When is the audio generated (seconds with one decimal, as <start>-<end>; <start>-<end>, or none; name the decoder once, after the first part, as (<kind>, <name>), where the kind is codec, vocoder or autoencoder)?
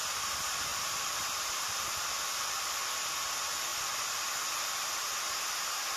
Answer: 0.7-3.1 (vocoder, BigVGAN v2)